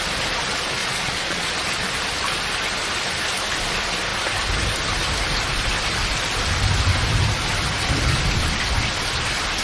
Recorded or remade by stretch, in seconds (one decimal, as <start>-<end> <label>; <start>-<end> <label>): 0.0-0.8 recorded; 0.8-1.5 remade; 1.5-9.6 recorded